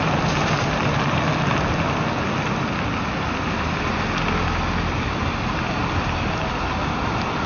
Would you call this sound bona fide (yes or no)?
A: yes